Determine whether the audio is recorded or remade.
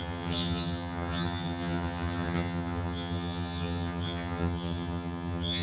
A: remade